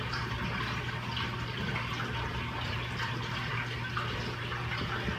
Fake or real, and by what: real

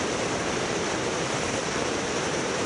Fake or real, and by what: fake, vocoder, BigVGAN v2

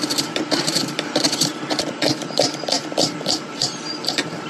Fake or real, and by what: fake, vocoder, BigVGAN v2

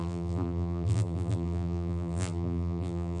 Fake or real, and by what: fake, vocoder, BigVGAN v2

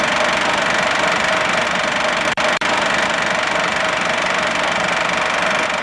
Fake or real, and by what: fake, vocoder, BigVGAN v2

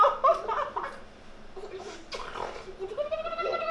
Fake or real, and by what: real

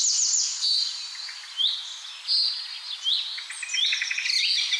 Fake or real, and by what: real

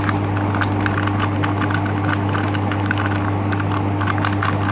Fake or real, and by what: real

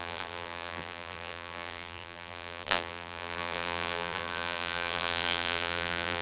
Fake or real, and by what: fake, vocoder, BigVGAN v2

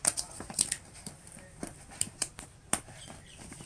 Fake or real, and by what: fake, vocoder, BigVGAN v2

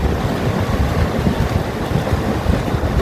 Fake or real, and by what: fake, vocoder, BigVGAN v2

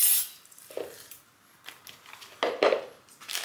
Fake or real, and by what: real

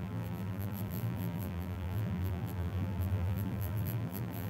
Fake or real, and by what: fake, vocoder, BigVGAN v2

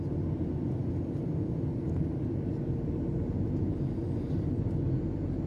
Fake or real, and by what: real